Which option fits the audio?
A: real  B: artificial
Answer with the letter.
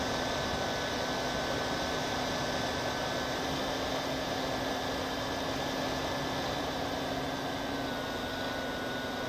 A